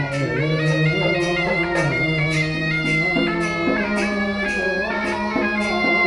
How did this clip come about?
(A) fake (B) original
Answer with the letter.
B